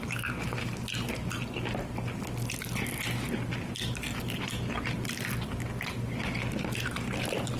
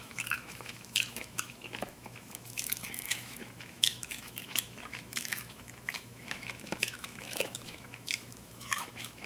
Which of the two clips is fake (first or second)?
second